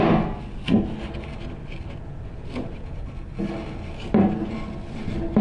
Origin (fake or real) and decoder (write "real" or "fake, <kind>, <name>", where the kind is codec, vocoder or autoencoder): real